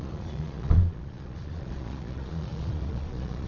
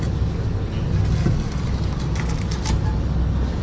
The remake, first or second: first